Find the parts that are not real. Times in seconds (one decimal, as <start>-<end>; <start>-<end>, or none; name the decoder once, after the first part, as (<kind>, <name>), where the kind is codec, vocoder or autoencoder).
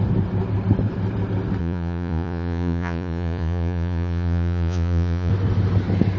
1.6-5.3 (vocoder, Vocos)